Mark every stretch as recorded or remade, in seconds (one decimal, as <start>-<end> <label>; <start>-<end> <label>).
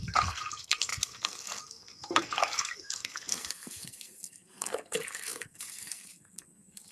0.0-6.9 remade